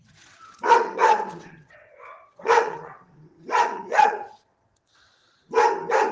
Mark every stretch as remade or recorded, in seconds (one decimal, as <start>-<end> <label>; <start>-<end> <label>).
0.0-5.2 remade; 5.2-6.1 recorded